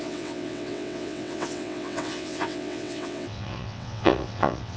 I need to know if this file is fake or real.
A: fake